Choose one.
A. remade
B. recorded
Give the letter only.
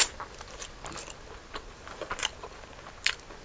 B